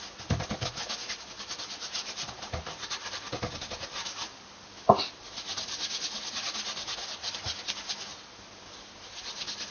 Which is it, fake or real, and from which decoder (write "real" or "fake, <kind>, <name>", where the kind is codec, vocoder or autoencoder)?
real